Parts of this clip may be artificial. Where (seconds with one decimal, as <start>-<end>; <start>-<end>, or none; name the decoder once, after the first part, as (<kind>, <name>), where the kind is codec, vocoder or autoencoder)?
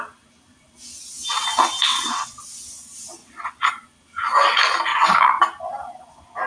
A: 1.9-2.4 (vocoder, WaveNeXt); 3.2-3.7; 4.9-5.4